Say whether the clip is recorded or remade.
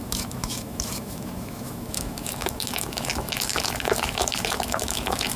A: remade